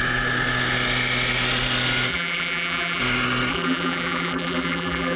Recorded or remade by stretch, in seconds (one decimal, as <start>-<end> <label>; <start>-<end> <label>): 0.0-2.1 recorded; 2.1-3.0 remade; 3.0-3.5 recorded; 3.5-5.2 remade